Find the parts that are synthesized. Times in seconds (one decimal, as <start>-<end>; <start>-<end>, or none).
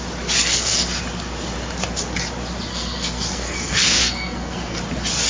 0.4-1.0; 2.7-4.8